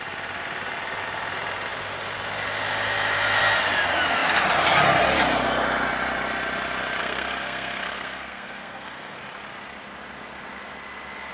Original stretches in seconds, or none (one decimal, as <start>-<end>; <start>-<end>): 0.0-7.0; 9.2-11.3